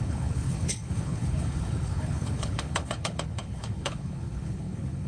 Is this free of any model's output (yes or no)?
no